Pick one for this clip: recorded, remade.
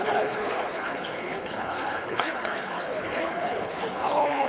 remade